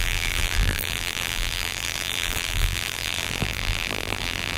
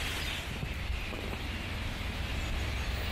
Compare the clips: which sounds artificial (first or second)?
first